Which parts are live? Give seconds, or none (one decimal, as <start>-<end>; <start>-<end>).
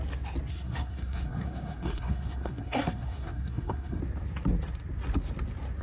0.0-0.5; 4.0-5.8